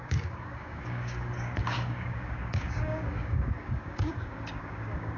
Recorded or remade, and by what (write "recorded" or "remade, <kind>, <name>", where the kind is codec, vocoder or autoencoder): remade, codec, DAC